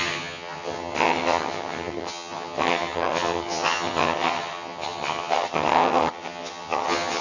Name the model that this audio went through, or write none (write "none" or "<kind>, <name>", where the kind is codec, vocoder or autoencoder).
vocoder, HiFi-GAN